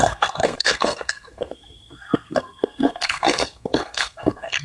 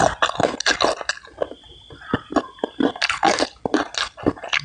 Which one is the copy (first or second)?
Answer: first